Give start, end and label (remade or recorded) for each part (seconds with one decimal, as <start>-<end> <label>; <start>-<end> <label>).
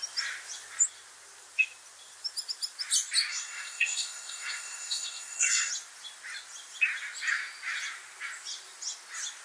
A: 0.0-3.3 recorded; 3.3-5.7 remade; 5.7-9.4 recorded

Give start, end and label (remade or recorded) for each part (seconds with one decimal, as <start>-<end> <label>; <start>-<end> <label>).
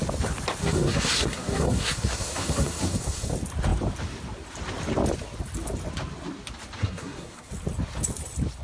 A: 0.0-0.6 recorded; 0.6-3.3 remade; 3.3-6.8 recorded; 6.8-7.5 remade; 7.5-8.6 recorded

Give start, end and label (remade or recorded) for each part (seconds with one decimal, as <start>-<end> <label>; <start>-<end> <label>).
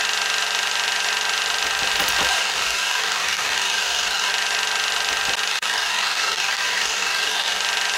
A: 0.0-2.3 recorded; 2.3-4.3 remade; 4.3-5.5 recorded; 5.5-7.6 remade; 7.6-8.0 recorded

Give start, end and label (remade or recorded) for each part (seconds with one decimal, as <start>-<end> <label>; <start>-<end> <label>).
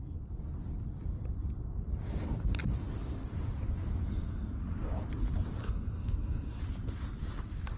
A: 0.0-5.6 recorded; 5.6-6.6 remade; 6.6-7.8 recorded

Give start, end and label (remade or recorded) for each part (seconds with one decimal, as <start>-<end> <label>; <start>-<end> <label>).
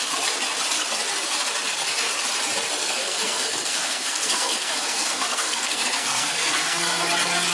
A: 0.0-2.8 recorded; 2.8-7.0 remade; 7.0-7.5 recorded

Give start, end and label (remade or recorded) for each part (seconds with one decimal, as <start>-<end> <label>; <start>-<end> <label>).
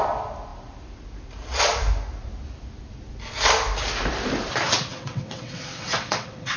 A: 0.0-4.9 recorded; 4.9-6.6 remade